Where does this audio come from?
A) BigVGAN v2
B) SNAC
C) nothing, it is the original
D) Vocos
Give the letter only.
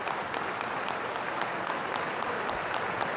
C